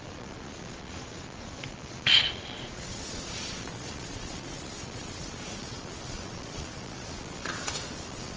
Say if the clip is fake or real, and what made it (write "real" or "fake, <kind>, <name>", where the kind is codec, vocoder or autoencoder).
fake, vocoder, Vocos